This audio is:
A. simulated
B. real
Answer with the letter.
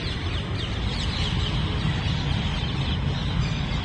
B